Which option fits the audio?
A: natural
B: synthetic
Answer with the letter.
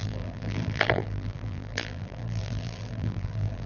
B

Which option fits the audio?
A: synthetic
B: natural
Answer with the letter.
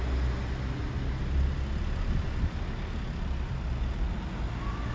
B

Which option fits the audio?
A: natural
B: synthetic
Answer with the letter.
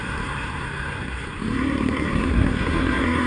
B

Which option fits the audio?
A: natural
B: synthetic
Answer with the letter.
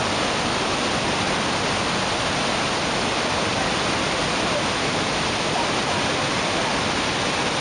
A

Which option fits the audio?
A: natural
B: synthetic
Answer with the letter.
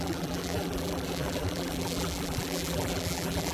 B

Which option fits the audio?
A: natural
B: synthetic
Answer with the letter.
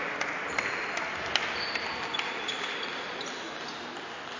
A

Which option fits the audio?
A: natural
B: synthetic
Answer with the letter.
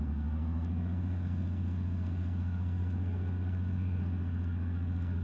B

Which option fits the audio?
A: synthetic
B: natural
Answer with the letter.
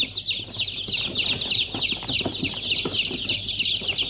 B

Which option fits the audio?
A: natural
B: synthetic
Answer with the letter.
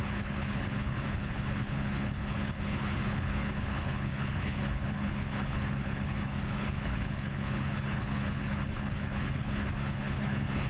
B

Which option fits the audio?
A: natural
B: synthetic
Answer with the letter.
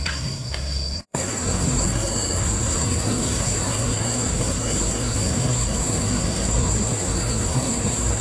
B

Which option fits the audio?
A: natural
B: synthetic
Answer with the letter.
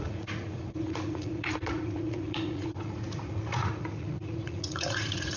B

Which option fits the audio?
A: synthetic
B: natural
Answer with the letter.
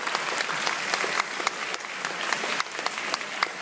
B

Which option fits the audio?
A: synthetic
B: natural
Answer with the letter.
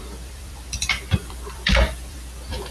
A